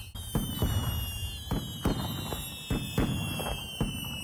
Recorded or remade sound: recorded